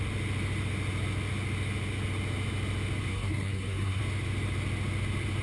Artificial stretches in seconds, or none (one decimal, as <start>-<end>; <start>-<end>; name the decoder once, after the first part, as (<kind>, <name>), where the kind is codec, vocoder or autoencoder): 3.1-4.0 (codec, SNAC)